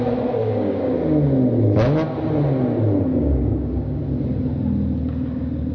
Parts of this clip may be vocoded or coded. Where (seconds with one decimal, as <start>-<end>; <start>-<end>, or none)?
0.4-0.9; 3.1-4.0